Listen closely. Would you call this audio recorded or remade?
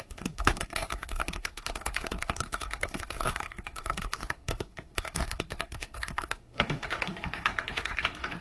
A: remade